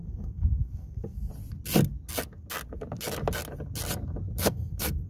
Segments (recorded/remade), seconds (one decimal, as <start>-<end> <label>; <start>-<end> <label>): 0.0-1.3 remade; 1.3-4.4 recorded; 4.4-5.1 remade